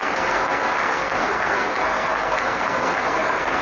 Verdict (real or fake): fake